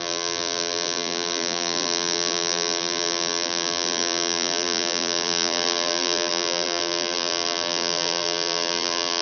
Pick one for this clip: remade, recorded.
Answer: remade